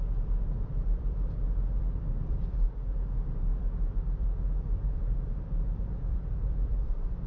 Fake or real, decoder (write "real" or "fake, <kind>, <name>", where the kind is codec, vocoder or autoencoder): fake, vocoder, BigVGAN v2